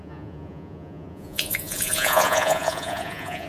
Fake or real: fake